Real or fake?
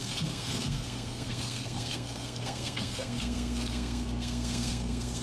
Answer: fake